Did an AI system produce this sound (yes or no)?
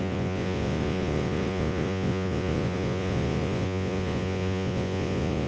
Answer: yes